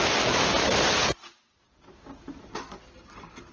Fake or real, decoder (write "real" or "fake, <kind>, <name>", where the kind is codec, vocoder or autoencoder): real